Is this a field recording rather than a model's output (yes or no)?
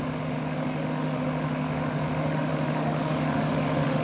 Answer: no